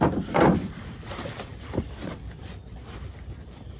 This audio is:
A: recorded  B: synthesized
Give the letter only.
A